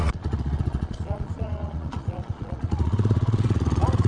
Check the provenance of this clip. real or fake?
fake